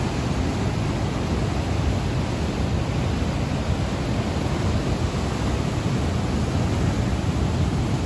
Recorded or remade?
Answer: recorded